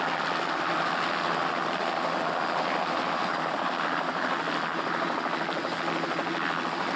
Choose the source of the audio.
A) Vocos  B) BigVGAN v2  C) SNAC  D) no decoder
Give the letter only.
D